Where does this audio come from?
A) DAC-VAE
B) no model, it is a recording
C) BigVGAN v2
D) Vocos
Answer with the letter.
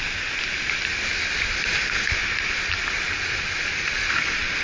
B